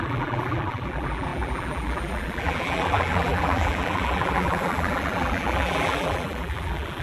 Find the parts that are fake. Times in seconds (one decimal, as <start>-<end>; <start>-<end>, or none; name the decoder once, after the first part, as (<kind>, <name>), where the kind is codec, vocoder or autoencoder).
0.0-7.0 (vocoder, BigVGAN v2)